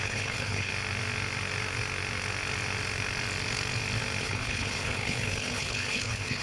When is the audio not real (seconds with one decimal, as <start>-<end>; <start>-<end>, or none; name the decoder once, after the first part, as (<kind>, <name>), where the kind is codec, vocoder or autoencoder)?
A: 0.0-0.7 (codec, HILCodec); 4.2-6.4